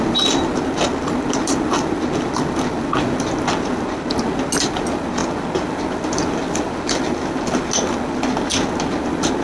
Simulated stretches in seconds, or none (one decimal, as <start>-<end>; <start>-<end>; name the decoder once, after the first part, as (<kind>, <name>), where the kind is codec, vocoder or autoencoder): none